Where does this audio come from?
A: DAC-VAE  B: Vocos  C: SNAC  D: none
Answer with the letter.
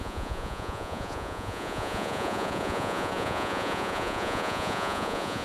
B